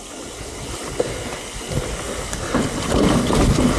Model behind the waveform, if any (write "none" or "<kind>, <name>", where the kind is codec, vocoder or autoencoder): none